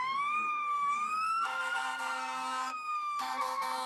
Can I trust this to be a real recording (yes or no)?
no